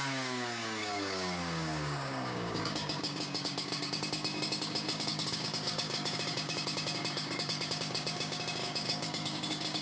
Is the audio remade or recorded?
remade